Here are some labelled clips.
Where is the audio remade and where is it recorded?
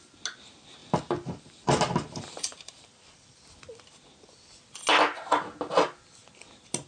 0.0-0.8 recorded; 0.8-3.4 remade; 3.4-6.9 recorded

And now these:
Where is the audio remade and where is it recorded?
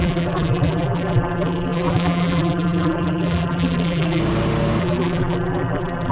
0.0-4.2 remade; 4.2-4.8 recorded; 4.8-6.1 remade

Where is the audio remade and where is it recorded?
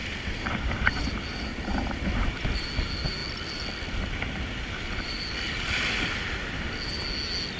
0.0-0.5 remade; 0.5-1.3 recorded; 1.3-2.7 remade; 2.7-7.6 recorded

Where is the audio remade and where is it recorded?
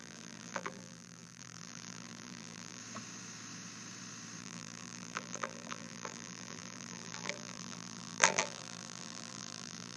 0.0-2.8 remade; 2.8-4.4 recorded; 4.4-10.0 remade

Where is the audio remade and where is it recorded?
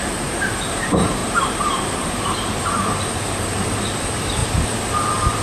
0.0-5.4 remade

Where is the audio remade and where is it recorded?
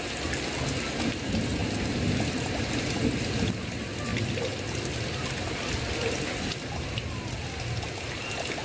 0.0-8.6 recorded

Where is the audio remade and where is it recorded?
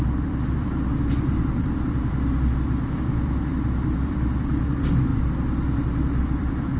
0.0-5.1 remade; 5.1-6.2 recorded; 6.2-6.8 remade